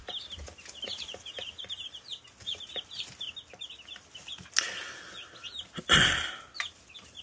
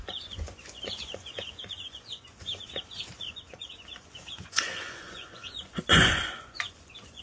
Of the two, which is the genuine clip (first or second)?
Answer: first